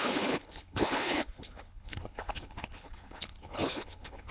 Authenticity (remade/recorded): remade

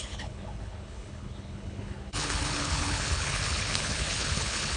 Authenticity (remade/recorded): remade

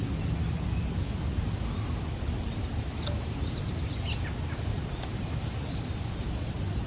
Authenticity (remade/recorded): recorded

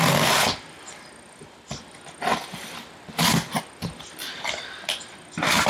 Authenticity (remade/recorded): recorded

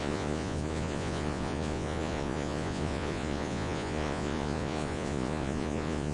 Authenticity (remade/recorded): remade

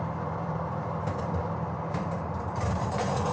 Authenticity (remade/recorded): remade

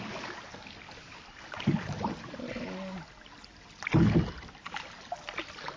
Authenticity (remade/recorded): recorded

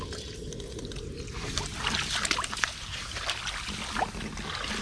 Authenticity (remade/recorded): recorded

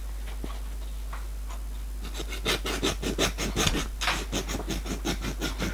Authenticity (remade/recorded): recorded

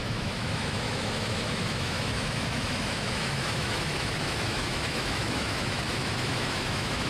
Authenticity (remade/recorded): remade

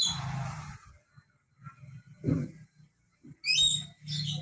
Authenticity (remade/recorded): recorded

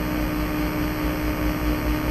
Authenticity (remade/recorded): recorded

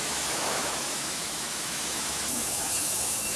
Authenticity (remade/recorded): remade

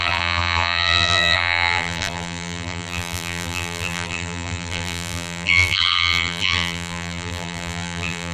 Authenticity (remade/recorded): remade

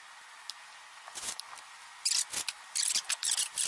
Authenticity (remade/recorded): recorded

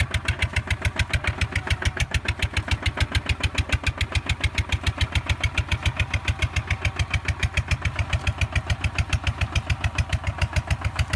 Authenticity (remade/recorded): recorded